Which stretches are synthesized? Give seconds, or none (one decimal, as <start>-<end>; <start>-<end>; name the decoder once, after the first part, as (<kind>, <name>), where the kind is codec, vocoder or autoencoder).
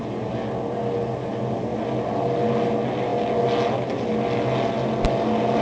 none